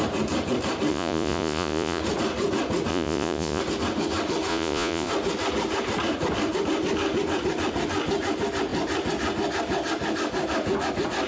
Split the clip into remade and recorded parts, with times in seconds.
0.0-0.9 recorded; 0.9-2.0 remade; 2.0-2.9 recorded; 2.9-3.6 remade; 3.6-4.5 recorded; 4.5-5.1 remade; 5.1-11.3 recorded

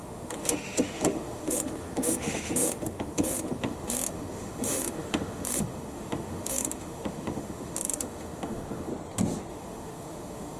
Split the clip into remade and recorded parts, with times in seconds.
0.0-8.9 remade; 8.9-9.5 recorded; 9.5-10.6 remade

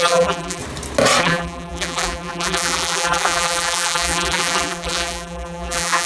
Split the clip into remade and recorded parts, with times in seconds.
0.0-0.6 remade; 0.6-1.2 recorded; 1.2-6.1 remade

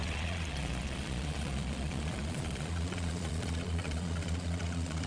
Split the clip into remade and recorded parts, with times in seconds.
0.0-5.1 remade

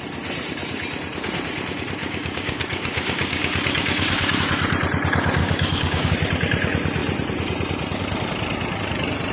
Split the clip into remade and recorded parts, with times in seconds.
0.0-2.0 recorded; 2.0-4.4 remade; 4.4-5.4 recorded; 5.4-6.1 remade; 6.1-9.3 recorded

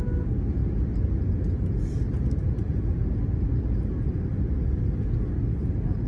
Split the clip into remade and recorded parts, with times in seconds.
0.0-6.1 recorded

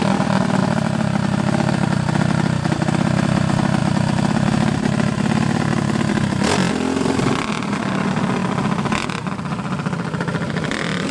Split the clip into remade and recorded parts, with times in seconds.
0.0-11.1 recorded